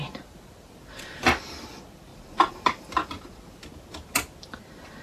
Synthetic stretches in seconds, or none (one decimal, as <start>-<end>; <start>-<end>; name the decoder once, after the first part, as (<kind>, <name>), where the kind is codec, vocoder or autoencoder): none